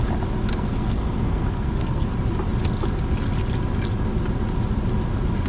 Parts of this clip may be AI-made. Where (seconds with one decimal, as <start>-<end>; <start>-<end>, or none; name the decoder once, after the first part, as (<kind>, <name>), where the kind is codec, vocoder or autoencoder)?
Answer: 0.5-2.1 (codec, SNAC)